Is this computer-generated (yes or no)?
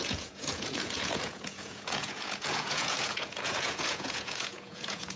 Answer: yes